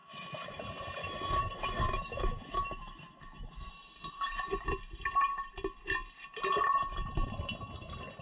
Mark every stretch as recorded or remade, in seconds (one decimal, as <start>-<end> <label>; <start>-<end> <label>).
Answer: 0.0-0.6 remade; 0.6-1.0 recorded; 1.0-3.7 remade; 3.7-8.2 recorded